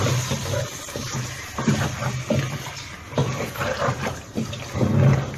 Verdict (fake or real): real